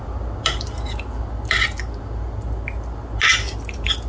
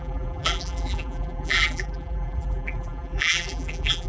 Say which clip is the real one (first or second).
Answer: first